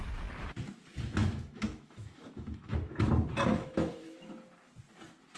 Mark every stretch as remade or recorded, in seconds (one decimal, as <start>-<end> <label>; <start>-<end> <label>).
0.0-1.2 recorded; 1.2-3.1 remade; 3.1-3.5 recorded; 3.5-4.3 remade; 4.3-5.4 recorded

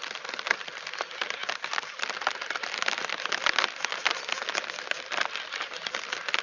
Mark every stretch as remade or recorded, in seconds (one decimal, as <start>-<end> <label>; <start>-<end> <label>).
0.0-6.4 recorded

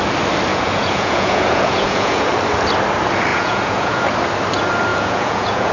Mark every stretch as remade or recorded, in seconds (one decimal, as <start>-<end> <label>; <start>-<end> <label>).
0.0-0.5 recorded; 0.5-2.3 remade; 2.3-3.3 recorded; 3.3-4.0 remade; 4.0-4.9 recorded; 4.9-5.7 remade

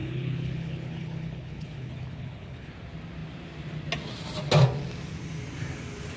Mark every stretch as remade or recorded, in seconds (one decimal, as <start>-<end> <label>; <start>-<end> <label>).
0.0-2.7 remade; 2.7-6.2 recorded

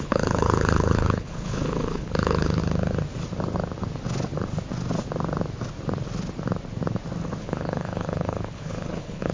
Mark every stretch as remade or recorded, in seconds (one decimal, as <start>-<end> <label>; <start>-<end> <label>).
0.0-2.6 remade; 2.6-7.4 recorded; 7.4-9.3 remade